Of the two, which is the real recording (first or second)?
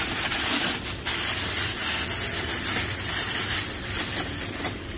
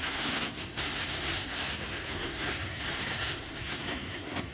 first